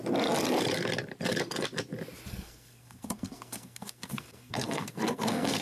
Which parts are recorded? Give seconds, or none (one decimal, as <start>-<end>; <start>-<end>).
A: 0.0-2.3